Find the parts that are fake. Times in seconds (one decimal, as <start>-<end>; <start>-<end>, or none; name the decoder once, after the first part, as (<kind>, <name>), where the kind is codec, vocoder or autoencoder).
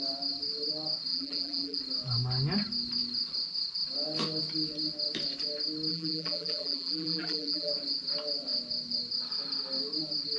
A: 1.1-1.8 (vocoder, BigVGAN v2); 5.9-7.7